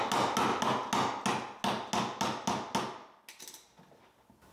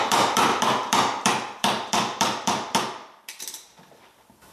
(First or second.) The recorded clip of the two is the first